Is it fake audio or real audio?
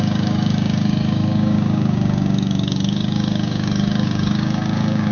fake